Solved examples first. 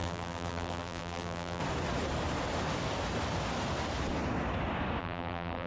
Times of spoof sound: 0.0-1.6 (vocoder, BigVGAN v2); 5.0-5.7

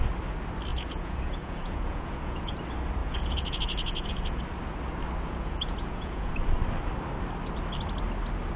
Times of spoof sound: 0.7-2.5 (vocoder, Vocos); 3.0-4.4; 5.4-6.3

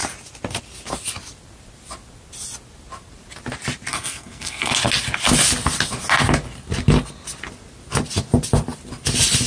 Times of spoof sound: 3.9-4.7 (codec, SNAC)

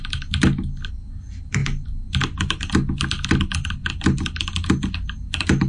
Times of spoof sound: none